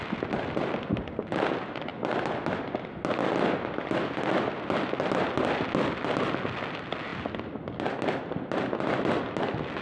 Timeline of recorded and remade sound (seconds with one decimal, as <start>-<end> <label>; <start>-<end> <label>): 0.0-9.8 recorded